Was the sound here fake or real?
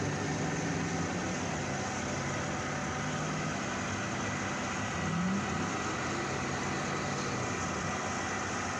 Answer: real